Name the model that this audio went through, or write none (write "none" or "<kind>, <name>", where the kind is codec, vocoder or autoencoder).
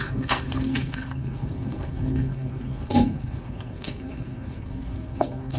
codec, SNAC